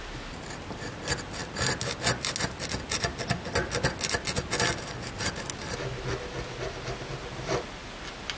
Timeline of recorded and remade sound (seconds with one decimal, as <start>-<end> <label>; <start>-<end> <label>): 0.0-8.4 recorded